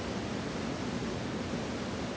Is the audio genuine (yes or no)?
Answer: yes